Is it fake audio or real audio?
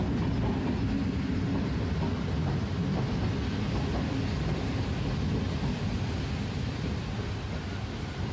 real